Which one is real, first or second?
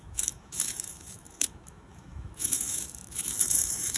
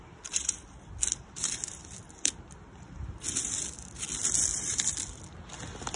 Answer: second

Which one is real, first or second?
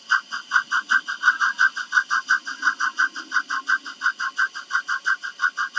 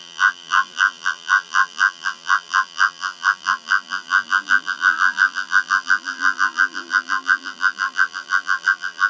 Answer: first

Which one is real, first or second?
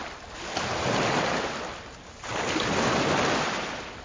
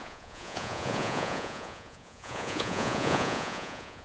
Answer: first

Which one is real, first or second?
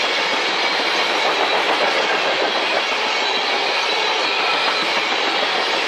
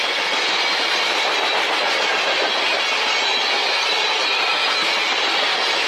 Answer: second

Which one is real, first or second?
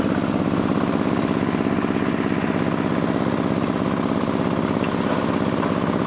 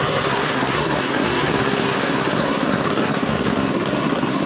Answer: first